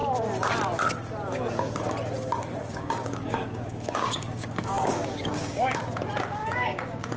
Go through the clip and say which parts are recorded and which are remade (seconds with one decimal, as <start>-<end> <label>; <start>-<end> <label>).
0.0-2.6 recorded; 2.6-5.8 remade; 5.8-6.4 recorded; 6.4-7.2 remade

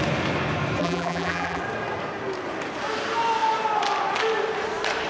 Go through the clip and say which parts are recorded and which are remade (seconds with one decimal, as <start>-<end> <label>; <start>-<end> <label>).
0.0-0.8 recorded; 0.8-1.6 remade; 1.6-5.1 recorded

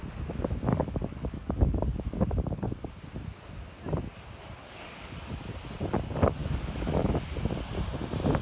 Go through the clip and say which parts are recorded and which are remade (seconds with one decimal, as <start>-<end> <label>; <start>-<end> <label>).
0.0-0.7 recorded; 0.7-2.9 remade; 2.9-4.6 recorded; 4.6-5.5 remade; 5.5-6.4 recorded; 6.4-7.1 remade; 7.1-8.4 recorded

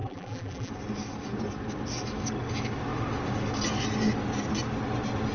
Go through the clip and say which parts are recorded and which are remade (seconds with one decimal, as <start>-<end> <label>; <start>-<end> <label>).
0.0-0.7 remade; 0.7-5.3 recorded

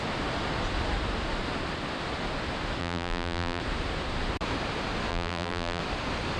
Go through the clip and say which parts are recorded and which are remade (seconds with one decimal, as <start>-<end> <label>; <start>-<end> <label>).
0.0-2.8 recorded; 2.8-3.6 remade; 3.6-5.1 recorded; 5.1-5.8 remade; 5.8-6.4 recorded

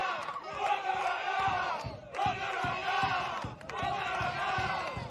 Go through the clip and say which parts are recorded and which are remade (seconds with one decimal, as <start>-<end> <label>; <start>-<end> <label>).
0.0-1.7 remade; 1.7-2.8 recorded; 2.8-4.2 remade; 4.2-5.1 recorded

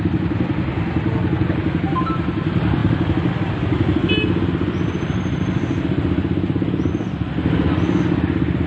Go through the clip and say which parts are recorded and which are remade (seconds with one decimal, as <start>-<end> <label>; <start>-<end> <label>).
0.0-8.7 recorded